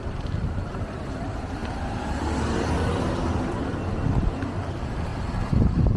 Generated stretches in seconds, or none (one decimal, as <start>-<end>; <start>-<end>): 0.0-1.6; 4.3-5.1